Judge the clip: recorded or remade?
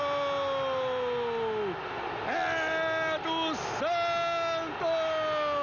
recorded